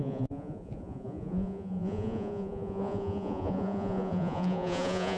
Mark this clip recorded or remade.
remade